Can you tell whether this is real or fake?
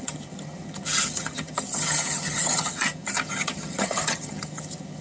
fake